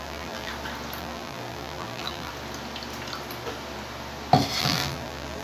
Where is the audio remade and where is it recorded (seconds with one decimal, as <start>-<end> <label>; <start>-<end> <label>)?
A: 0.0-0.5 remade; 0.5-1.0 recorded; 1.0-2.3 remade; 2.3-4.6 recorded; 4.6-5.4 remade